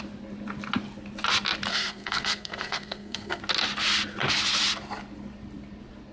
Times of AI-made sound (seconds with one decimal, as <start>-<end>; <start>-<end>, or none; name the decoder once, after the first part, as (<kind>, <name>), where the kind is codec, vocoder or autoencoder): 1.7-3.4 (codec, SNAC)